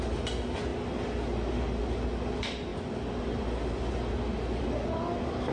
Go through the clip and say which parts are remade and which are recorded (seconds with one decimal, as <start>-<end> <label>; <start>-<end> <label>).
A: 0.0-5.5 recorded